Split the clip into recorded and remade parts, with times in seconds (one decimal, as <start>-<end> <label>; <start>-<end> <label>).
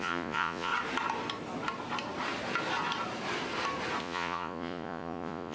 0.0-0.7 remade; 0.7-4.0 recorded; 4.0-5.5 remade